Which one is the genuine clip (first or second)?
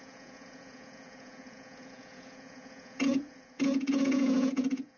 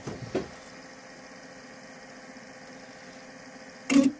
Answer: second